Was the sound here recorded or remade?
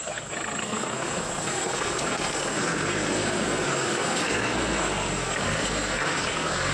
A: remade